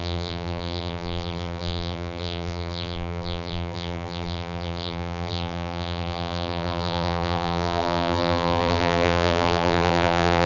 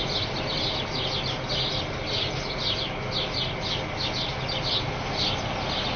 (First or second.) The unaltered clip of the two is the second